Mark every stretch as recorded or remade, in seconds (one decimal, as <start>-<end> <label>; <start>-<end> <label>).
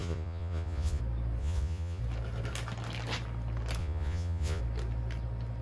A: 0.0-1.0 remade; 1.0-1.4 recorded; 1.4-2.0 remade; 2.0-3.8 recorded; 3.8-4.6 remade; 4.6-5.6 recorded